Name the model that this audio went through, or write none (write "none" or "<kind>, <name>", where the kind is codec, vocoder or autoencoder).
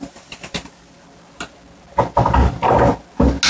none